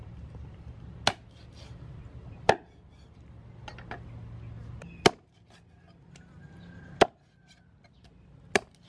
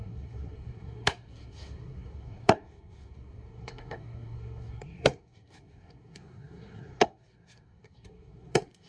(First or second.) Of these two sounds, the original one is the first